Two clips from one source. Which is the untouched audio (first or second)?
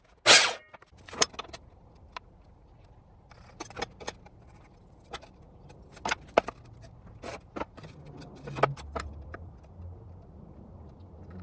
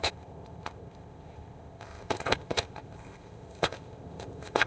first